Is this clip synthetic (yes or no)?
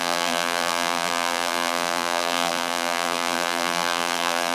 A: yes